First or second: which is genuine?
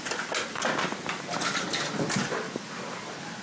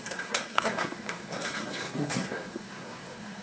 first